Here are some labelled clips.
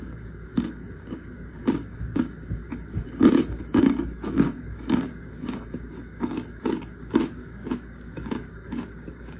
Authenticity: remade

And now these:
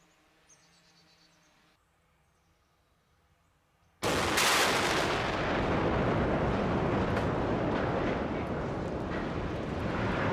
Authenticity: recorded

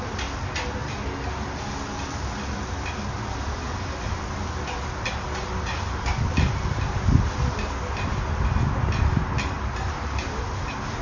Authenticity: recorded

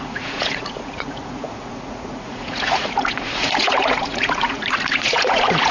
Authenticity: remade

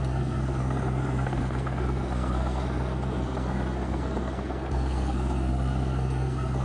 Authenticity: remade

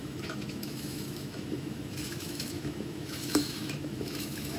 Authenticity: remade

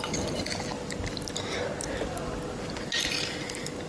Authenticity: recorded